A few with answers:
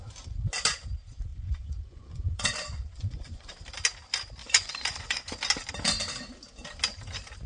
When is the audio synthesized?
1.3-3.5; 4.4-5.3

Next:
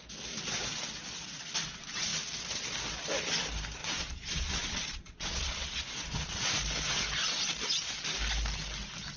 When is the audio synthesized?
3.8-6.5

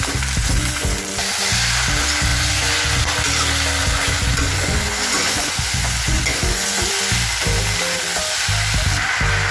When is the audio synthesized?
0.4-1.1; 2.3-3.0; 3.8-6.9

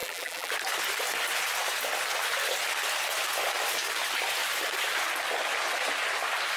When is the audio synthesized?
0.0-0.5

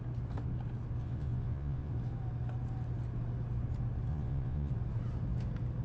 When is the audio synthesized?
1.0-1.9; 4.1-4.7

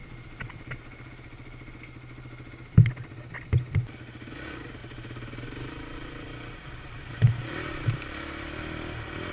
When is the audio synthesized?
4.8-8.1

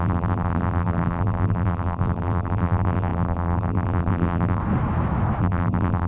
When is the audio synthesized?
0.0-4.6; 5.4-6.1

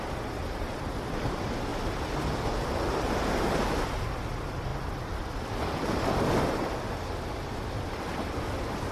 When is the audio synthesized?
none